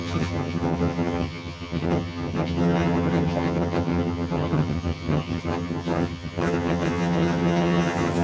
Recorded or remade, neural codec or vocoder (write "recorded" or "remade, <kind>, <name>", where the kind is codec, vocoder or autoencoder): remade, vocoder, HiFi-GAN